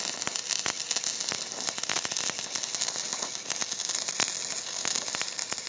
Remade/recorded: recorded